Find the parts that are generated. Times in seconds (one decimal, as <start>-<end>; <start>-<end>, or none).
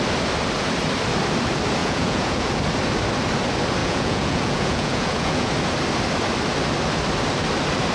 1.8-2.6; 3.8-5.5